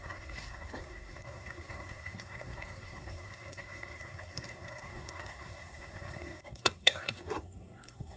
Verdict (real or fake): fake